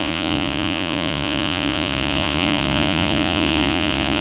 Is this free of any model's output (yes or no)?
no